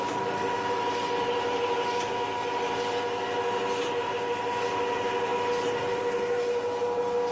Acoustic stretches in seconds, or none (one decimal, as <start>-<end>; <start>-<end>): 0.0-7.3

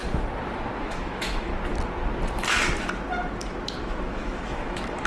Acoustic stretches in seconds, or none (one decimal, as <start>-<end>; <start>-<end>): 0.0-0.8; 1.5-3.8

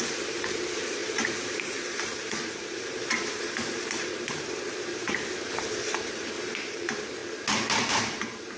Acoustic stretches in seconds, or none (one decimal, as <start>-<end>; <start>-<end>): 7.2-7.9